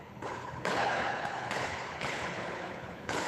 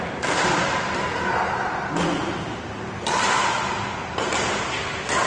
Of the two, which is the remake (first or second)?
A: first